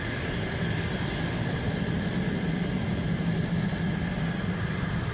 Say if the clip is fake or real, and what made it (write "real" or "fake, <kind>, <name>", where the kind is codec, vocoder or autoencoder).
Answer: real